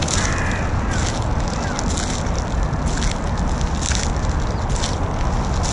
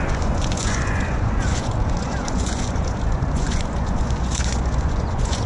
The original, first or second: first